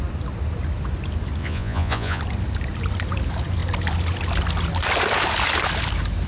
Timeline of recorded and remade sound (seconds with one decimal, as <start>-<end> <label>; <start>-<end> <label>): 0.0-1.4 recorded; 1.4-2.2 remade; 2.2-6.3 recorded